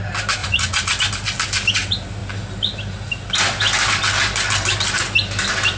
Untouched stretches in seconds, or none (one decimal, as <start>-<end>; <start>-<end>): 0.0-0.4; 1.0-5.8

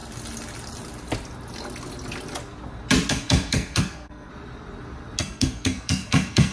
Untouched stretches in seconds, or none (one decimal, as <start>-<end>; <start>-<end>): 0.0-3.1; 4.3-5.2

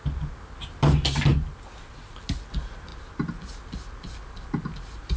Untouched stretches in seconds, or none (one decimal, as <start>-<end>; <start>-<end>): 0.0-5.2

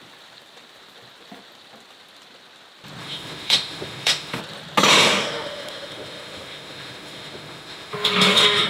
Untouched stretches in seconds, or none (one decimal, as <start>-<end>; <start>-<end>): 0.0-3.0; 4.4-4.9

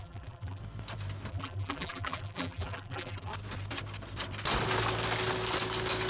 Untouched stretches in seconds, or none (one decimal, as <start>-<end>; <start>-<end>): 0.6-1.3; 3.3-6.1

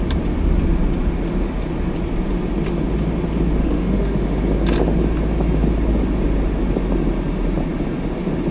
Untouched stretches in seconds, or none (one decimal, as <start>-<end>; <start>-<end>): 0.0-3.6; 4.4-8.5

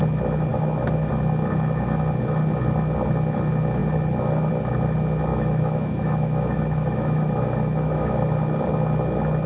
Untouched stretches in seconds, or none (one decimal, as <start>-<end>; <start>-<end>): 0.0-0.5; 1.1-5.3; 8.2-9.5